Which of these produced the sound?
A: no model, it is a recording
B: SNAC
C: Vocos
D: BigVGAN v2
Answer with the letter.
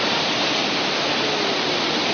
A